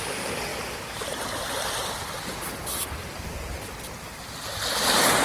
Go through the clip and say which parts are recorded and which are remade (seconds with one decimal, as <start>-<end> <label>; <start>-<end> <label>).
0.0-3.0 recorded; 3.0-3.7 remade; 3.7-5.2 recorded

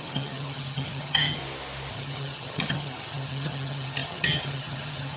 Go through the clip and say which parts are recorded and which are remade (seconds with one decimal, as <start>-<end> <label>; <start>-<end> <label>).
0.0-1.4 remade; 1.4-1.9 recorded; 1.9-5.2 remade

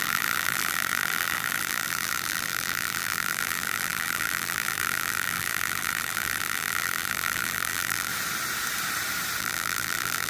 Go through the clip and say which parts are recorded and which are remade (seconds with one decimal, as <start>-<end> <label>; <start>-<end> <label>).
0.0-8.1 remade; 8.1-9.4 recorded; 9.4-10.3 remade